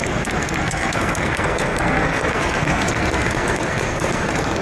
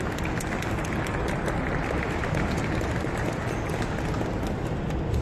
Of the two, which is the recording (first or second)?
second